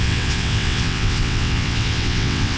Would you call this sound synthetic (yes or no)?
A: yes